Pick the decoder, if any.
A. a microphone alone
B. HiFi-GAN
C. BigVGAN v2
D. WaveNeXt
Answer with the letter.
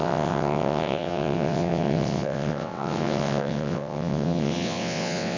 D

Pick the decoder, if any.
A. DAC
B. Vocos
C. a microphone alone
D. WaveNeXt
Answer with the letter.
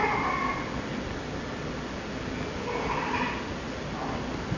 C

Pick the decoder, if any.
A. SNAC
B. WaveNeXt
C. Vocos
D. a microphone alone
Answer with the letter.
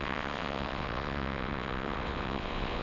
B